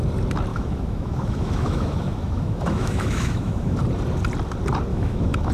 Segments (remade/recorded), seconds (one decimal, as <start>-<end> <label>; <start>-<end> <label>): 0.0-0.5 recorded; 0.5-3.8 remade; 3.8-4.9 recorded; 4.9-5.5 remade